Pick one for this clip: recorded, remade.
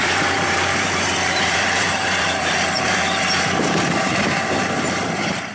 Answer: remade